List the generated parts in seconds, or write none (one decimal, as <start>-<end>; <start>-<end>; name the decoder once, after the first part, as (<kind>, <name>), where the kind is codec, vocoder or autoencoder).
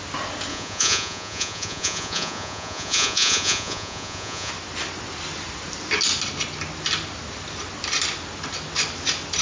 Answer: 0.5-4.5 (vocoder, Vocos)